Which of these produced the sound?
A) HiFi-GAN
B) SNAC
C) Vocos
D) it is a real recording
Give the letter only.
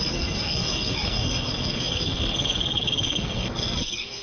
B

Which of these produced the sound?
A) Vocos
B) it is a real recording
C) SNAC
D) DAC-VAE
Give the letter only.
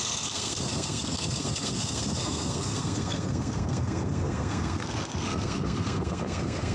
C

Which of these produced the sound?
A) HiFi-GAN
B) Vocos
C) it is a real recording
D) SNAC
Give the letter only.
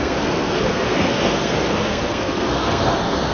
D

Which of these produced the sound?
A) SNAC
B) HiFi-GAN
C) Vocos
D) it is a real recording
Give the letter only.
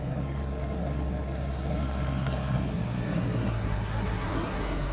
A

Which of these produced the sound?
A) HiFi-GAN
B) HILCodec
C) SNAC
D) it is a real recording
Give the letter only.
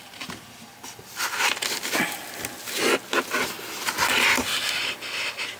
D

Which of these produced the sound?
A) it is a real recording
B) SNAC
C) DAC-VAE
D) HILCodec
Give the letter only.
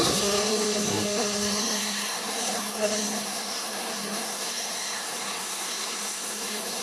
B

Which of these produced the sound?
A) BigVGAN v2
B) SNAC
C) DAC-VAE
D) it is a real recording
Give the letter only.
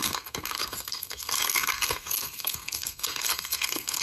B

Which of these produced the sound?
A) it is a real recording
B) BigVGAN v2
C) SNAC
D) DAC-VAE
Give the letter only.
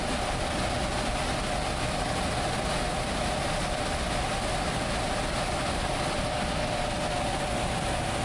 A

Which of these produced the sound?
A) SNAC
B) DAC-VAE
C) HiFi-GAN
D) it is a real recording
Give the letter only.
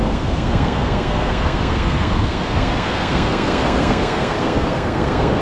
A